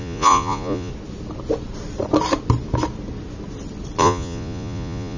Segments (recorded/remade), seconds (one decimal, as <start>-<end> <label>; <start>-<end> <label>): 0.0-0.9 remade; 0.9-4.0 recorded; 4.0-5.2 remade